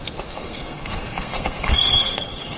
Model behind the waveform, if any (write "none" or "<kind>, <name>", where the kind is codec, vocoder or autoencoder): codec, SNAC